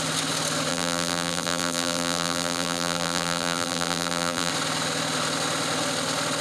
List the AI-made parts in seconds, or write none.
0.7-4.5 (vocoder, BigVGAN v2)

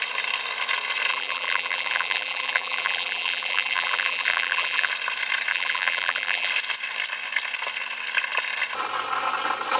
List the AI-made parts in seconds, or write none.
1.1-4.9 (vocoder, BigVGAN v2); 5.5-6.5

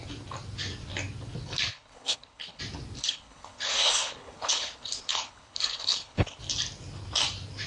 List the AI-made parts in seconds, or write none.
1.7-2.6 (codec, HILCodec); 3.0-6.4

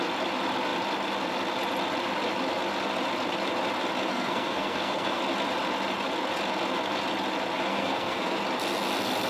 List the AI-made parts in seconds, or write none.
4.1-5.2 (codec, SNAC); 7.7-8.4

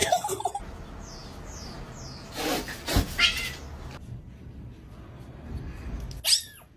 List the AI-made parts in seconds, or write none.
none

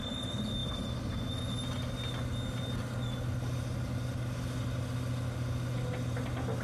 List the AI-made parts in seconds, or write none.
none

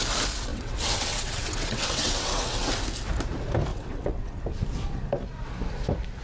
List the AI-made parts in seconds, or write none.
0.5-2.8 (vocoder, WaveNeXt); 3.7-4.4